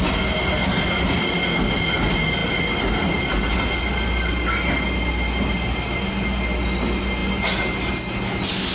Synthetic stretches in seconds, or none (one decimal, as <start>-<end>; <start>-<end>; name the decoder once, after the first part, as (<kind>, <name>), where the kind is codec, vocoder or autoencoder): none